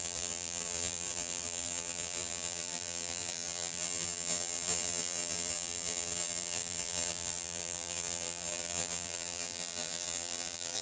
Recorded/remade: remade